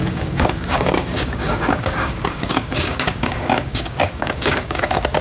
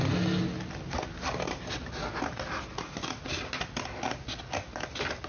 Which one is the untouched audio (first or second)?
second